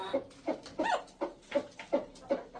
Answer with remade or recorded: recorded